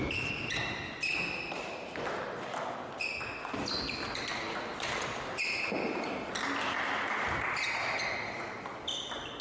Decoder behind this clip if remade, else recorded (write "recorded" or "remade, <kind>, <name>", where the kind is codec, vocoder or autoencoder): recorded